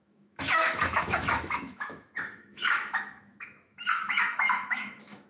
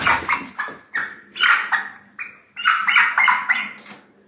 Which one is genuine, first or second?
second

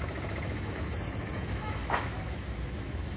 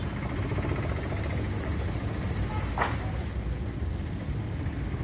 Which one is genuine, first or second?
second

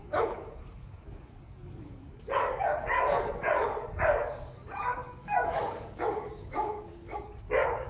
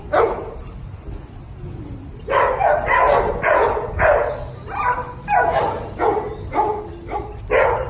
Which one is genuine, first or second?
second